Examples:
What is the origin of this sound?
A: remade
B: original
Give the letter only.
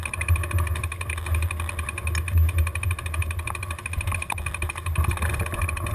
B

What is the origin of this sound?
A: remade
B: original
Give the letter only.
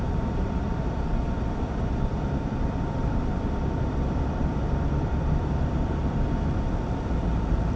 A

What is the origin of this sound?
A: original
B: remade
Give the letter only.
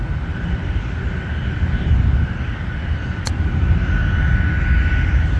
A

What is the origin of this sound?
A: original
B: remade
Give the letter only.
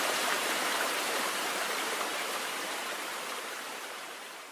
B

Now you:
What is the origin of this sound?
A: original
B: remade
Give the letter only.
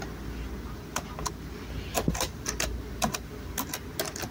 A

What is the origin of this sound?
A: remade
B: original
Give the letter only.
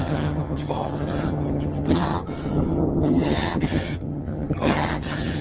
A